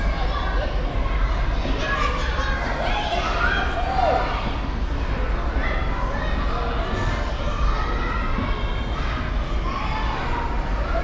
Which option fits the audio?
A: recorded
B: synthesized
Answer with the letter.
A